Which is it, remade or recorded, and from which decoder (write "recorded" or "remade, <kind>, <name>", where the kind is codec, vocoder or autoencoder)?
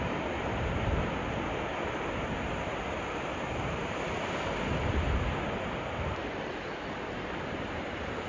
recorded